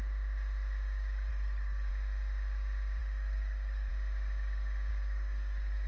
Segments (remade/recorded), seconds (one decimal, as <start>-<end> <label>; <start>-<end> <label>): 0.0-1.3 recorded; 1.3-1.9 remade; 1.9-3.0 recorded; 3.0-3.9 remade; 3.9-4.9 recorded; 4.9-5.9 remade